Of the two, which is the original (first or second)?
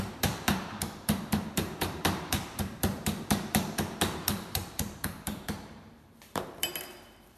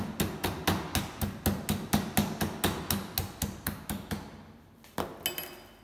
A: second